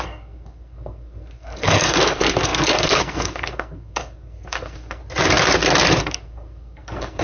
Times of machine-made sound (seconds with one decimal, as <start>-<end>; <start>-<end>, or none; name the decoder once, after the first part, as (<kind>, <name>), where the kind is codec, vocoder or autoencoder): 0.0-5.0 (codec, SNAC); 6.0-7.2